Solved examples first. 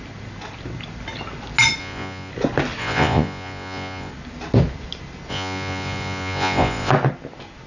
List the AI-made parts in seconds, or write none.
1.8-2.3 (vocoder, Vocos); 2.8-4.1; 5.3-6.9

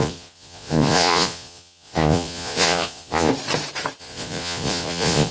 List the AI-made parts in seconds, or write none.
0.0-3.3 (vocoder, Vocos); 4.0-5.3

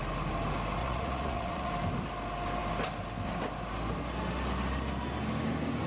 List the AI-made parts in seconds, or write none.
0.8-1.7 (vocoder, Vocos)

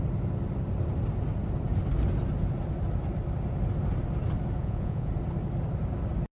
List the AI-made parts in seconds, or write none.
4.6-5.1 (vocoder, Vocos)